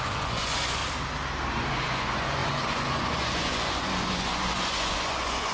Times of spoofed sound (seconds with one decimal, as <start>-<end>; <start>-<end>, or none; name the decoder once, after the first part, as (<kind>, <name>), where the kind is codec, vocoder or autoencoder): 0.0-0.8 (vocoder, Vocos); 1.5-5.5